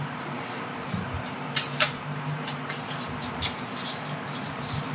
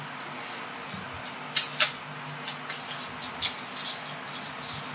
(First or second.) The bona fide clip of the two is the second